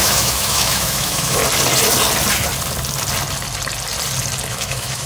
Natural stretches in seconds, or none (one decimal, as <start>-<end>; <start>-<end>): 1.4-4.5